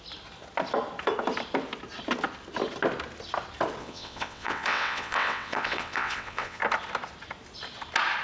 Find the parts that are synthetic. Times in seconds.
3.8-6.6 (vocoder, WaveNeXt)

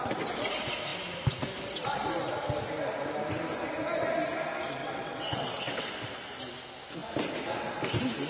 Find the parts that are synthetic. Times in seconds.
4.8-5.9 (vocoder, WaveNeXt)